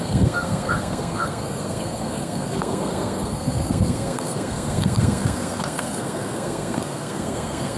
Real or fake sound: fake